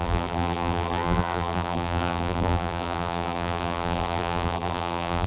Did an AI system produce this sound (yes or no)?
yes